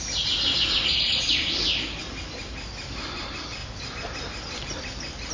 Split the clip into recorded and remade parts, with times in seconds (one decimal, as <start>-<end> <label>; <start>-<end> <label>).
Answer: 0.0-1.1 recorded; 1.1-1.6 remade; 1.6-5.3 recorded